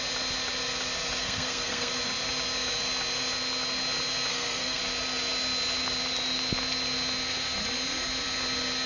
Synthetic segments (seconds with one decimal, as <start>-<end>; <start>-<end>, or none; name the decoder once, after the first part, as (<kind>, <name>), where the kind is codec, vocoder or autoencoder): 1.2-1.9 (codec, SNAC); 4.3-4.8